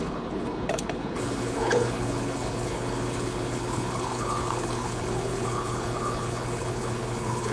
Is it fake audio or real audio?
fake